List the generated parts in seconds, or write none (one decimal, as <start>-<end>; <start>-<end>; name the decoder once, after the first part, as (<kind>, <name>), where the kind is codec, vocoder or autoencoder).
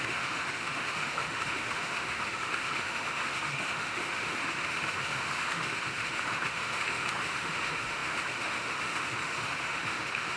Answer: 0.0-10.4 (autoencoder, DAC-VAE)